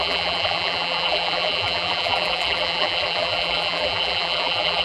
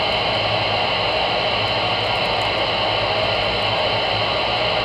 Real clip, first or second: second